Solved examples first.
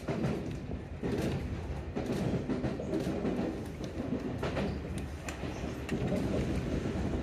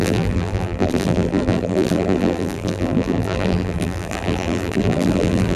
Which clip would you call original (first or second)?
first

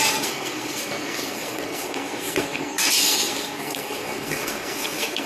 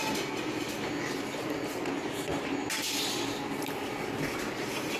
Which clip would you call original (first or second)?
second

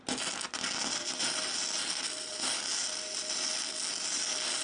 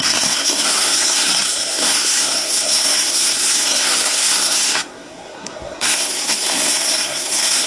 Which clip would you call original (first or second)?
first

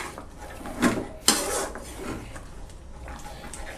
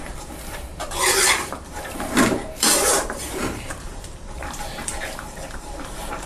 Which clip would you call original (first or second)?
first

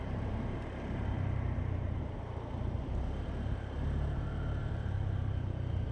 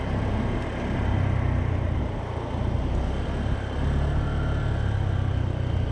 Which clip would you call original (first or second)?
second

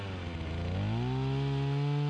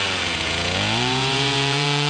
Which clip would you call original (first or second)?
first